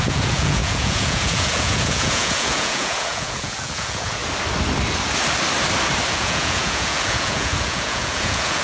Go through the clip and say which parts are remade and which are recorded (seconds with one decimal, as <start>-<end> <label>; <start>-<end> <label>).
0.0-4.2 remade; 4.2-6.1 recorded; 6.1-8.6 remade

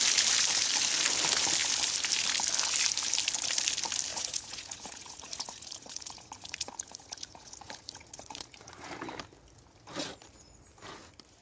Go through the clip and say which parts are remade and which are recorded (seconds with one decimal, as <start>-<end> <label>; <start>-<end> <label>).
0.0-4.1 recorded; 4.1-9.1 remade; 9.1-11.4 recorded

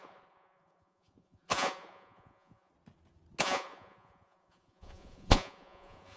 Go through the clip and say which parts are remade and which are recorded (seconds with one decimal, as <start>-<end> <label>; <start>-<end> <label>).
0.0-2.7 remade; 2.7-3.4 recorded; 3.4-6.2 remade

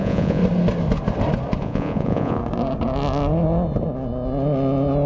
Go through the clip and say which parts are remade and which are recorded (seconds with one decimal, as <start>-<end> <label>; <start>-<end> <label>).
0.0-0.4 remade; 0.4-1.6 recorded; 1.6-2.4 remade; 2.4-5.1 recorded

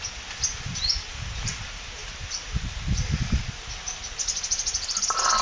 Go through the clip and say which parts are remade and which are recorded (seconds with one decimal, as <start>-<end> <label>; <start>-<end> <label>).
0.0-5.4 recorded

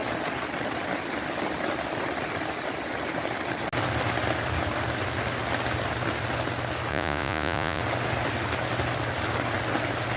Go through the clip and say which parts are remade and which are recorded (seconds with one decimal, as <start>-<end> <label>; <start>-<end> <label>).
0.0-6.9 recorded; 6.9-7.8 remade; 7.8-10.2 recorded

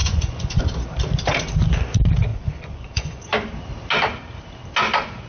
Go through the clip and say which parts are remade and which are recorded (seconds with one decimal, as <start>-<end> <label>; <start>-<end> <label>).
0.0-0.6 remade; 0.6-2.3 recorded; 2.3-3.3 remade; 3.3-5.3 recorded